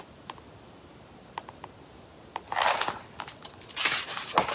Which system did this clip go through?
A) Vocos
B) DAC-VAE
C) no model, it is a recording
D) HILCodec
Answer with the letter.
C